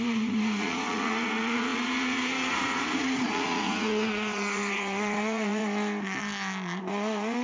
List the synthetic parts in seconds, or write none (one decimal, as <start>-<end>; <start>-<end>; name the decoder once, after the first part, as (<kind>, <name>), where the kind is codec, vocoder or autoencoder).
0.0-5.6 (vocoder, Vocos); 6.9-7.4